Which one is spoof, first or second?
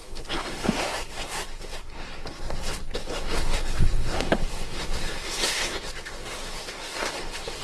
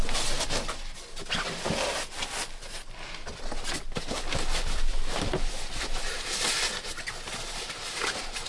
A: first